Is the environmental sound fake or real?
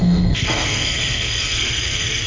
fake